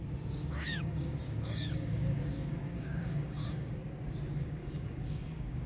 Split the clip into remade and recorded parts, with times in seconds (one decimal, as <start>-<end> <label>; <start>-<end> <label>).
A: 0.0-0.4 recorded; 0.4-3.8 remade; 3.8-4.4 recorded; 4.4-5.7 remade